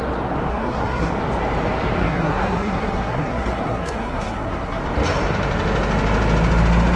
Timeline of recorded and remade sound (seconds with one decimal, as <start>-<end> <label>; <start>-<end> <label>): 0.0-0.5 recorded; 0.5-1.1 remade; 1.1-2.0 recorded; 2.0-4.8 remade; 4.8-7.0 recorded